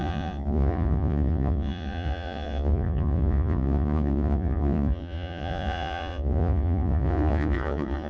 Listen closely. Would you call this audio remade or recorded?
remade